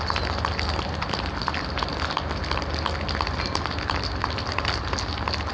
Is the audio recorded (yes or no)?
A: yes